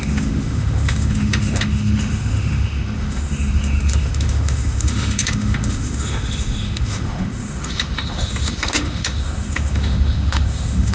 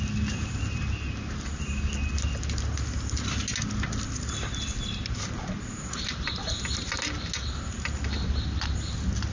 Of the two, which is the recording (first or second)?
second